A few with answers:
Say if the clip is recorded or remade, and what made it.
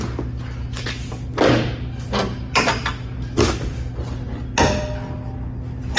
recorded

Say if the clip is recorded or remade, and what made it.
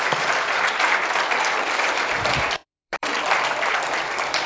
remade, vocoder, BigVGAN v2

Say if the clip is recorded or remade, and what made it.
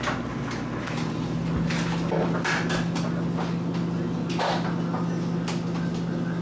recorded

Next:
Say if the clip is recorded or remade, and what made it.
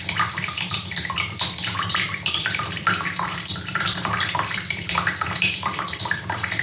remade, vocoder, BigVGAN v2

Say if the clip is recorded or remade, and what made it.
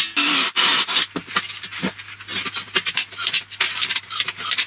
recorded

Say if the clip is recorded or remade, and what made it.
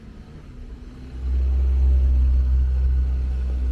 recorded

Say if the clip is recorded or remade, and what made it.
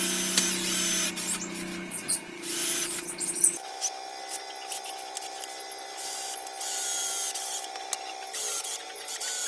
recorded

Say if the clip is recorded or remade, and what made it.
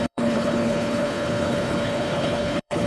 remade, codec, HILCodec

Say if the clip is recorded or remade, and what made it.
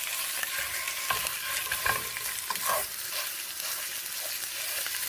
recorded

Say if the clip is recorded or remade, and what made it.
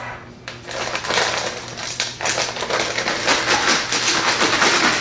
recorded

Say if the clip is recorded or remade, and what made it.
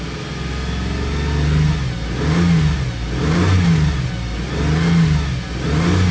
recorded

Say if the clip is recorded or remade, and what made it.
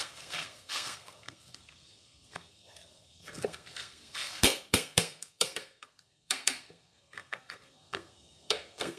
remade, codec, SNAC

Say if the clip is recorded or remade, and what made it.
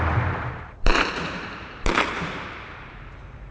remade, vocoder, BigVGAN v2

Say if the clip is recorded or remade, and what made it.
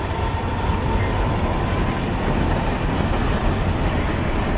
recorded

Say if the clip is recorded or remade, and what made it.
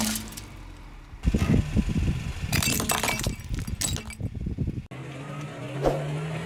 recorded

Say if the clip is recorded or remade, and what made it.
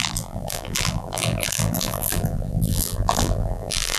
remade, vocoder, BigVGAN v2